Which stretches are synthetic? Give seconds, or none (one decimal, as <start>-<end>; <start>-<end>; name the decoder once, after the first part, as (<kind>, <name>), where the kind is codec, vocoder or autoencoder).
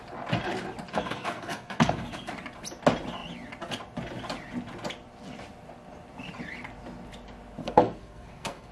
0.9-2.3 (codec, SNAC); 7.6-8.7